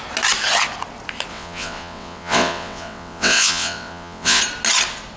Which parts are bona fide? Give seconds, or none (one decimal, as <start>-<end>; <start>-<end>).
0.0-1.3; 4.4-5.2